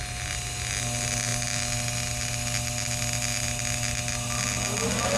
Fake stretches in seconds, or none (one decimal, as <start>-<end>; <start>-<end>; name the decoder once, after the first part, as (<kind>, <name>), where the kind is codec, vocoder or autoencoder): none